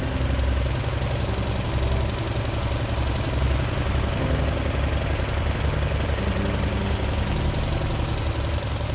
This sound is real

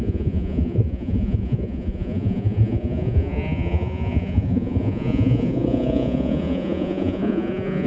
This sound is fake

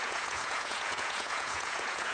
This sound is fake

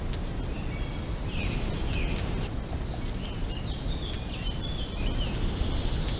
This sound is real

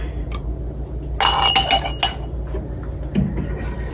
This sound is real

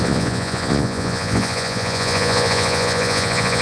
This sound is fake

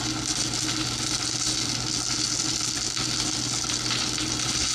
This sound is real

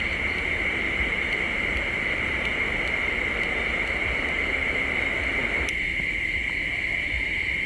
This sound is real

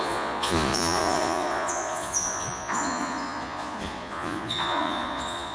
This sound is fake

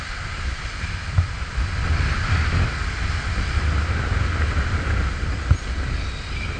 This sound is real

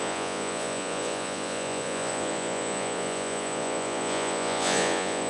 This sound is fake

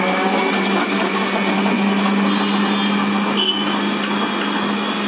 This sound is real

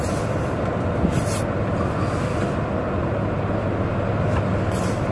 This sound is real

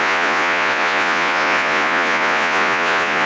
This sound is fake